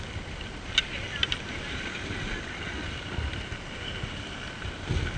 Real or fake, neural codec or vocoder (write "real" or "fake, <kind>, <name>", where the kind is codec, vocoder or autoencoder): real